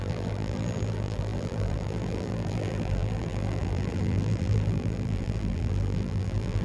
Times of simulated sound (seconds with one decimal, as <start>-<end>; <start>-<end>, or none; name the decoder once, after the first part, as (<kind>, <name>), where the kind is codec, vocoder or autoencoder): 0.0-6.6 (vocoder, BigVGAN v2)

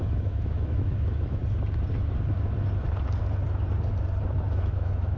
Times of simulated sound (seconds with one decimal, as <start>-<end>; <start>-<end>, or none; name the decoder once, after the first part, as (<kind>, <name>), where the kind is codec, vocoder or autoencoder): 0.0-1.4 (autoencoder, DAC-VAE); 4.5-5.2

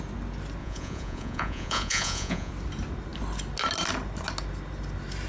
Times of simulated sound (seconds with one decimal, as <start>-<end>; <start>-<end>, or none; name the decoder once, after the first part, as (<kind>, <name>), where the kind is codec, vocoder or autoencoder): 0.6-2.5 (vocoder, Vocos)

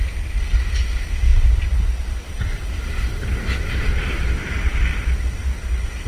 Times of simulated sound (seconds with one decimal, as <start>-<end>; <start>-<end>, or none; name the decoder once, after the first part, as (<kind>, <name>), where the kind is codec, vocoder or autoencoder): 1.3-5.0 (vocoder, BigVGAN v2)

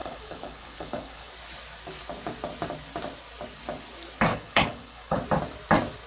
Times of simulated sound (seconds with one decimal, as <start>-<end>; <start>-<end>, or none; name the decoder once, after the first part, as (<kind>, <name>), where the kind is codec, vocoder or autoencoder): 0.0-1.3 (codec, HILCodec); 4.3-5.2

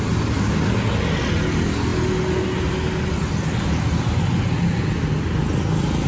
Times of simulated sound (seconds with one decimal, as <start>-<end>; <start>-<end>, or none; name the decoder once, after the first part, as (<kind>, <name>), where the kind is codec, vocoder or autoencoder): none